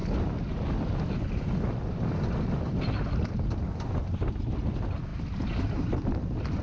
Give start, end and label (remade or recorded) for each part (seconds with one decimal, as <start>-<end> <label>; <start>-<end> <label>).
0.0-6.6 recorded